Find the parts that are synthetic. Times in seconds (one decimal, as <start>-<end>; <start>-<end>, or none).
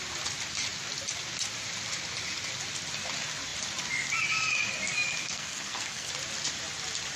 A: 5.2-6.1